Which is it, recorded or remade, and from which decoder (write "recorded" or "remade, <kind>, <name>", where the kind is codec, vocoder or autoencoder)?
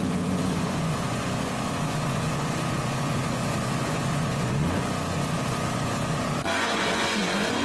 remade, vocoder, Vocos